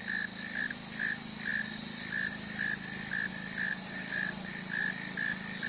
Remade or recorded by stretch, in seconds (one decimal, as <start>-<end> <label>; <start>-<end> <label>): 0.0-3.7 recorded; 3.7-4.5 remade; 4.5-5.7 recorded